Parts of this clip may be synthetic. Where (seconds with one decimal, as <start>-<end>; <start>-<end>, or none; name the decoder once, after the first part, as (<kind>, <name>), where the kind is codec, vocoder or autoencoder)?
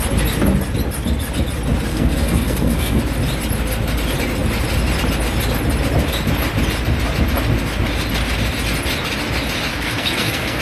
1.9-3.0 (codec, SNAC); 9.7-10.6